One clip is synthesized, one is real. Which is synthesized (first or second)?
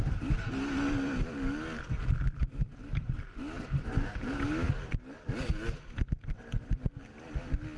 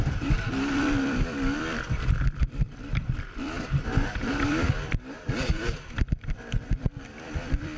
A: second